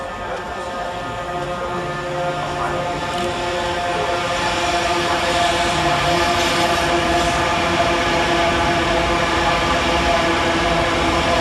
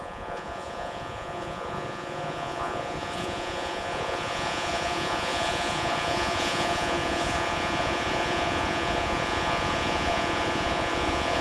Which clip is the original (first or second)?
first